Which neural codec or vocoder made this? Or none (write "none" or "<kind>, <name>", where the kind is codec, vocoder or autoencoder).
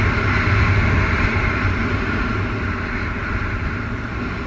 none